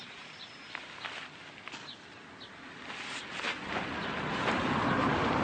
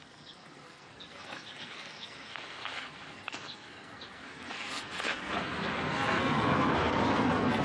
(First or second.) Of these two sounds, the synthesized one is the second